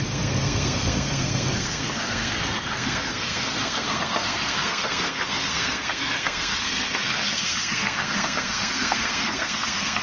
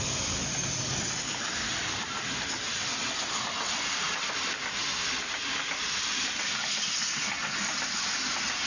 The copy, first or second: first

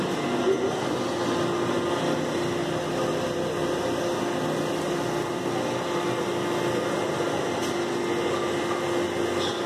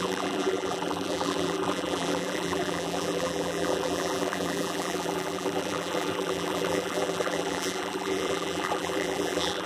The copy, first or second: second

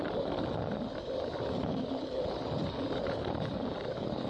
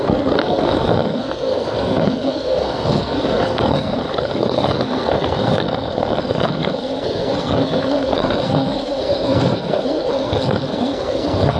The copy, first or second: second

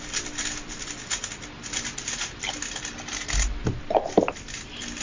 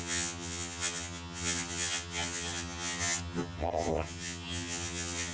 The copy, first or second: second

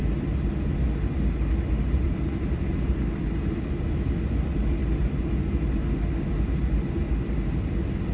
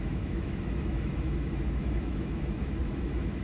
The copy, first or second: second